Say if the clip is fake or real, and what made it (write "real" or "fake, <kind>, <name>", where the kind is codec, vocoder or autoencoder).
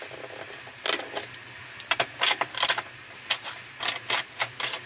real